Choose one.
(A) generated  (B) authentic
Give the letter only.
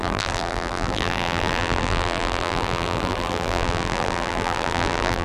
A